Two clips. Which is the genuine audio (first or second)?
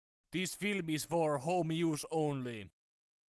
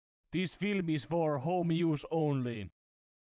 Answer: first